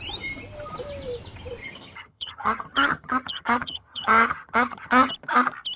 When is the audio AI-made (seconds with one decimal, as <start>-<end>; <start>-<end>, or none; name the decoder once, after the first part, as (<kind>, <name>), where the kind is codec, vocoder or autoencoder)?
1.6-5.1 (vocoder, HiFi-GAN)

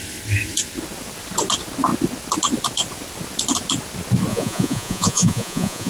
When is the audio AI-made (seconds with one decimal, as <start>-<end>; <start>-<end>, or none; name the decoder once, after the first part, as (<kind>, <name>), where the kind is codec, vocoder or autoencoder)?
4.3-5.9 (vocoder, Vocos)

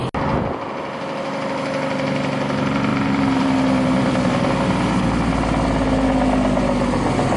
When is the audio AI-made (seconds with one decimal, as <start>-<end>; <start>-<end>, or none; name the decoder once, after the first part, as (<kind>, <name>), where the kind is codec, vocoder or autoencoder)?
2.9-4.5 (vocoder, BigVGAN v2)

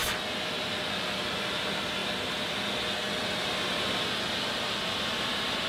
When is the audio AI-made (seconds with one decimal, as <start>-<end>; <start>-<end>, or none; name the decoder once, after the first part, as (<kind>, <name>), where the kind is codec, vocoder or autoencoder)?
0.0-1.2 (vocoder, BigVGAN v2)

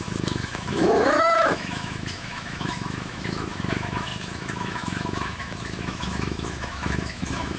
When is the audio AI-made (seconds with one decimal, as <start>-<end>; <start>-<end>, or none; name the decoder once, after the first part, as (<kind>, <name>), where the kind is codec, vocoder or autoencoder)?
0.0-7.6 (autoencoder, DAC-VAE)

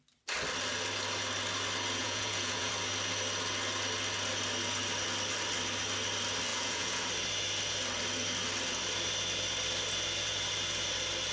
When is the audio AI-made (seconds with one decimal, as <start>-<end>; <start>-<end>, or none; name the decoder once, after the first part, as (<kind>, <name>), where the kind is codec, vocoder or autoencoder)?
2.0-2.7 (vocoder, Vocos); 6.5-7.1

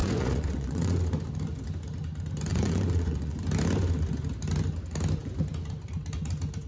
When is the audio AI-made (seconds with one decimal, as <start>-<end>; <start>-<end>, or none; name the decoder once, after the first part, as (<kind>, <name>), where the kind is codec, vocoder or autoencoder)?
0.0-1.0 (vocoder, Vocos); 2.5-3.4

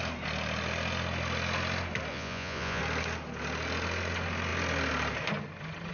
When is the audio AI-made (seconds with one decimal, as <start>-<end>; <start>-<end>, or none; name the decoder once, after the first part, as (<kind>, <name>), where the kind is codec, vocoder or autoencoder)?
2.1-2.8 (vocoder, Vocos)